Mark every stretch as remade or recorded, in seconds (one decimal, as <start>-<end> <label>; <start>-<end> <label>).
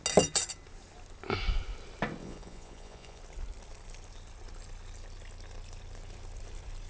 0.0-2.2 recorded; 2.2-3.2 remade; 3.2-6.9 recorded